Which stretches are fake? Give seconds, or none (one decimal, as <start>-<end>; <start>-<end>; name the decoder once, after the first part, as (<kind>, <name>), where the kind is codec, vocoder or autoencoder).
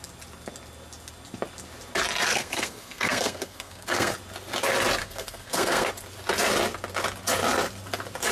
2.3-4.1 (codec, SNAC); 5.0-5.9